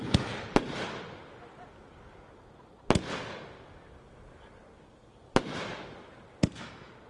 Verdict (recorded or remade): recorded